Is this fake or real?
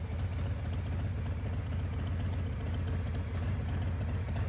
real